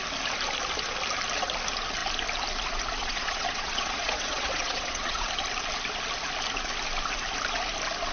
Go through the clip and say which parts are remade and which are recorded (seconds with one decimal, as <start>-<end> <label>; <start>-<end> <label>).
0.0-3.0 recorded; 3.0-5.3 remade; 5.3-8.1 recorded